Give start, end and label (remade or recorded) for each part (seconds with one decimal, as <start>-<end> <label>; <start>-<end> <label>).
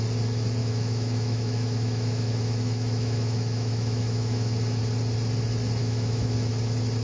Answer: 0.0-0.6 recorded; 0.6-4.8 remade; 4.8-5.8 recorded; 5.8-6.5 remade; 6.5-7.0 recorded